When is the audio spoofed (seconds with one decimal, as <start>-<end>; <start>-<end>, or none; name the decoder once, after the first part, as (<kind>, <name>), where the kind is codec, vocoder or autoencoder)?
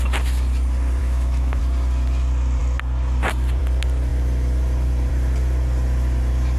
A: 1.0-1.6 (autoencoder, DAC-VAE)